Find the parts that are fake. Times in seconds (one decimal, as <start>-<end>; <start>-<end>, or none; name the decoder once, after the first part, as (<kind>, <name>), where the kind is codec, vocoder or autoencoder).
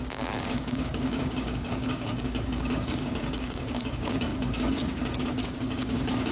0.0-6.3 (codec, DAC)